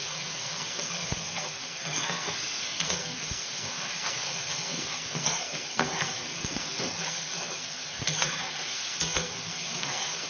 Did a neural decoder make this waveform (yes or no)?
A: yes